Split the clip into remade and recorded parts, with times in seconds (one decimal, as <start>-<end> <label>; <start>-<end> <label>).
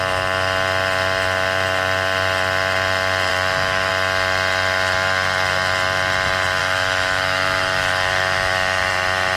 0.0-3.3 recorded; 3.3-3.9 remade; 3.9-6.6 recorded; 6.6-8.9 remade; 8.9-9.4 recorded